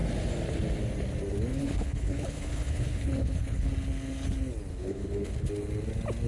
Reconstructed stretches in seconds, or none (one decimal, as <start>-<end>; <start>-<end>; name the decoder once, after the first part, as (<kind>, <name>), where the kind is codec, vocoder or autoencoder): 1.5-3.7 (codec, HILCodec); 4.7-5.5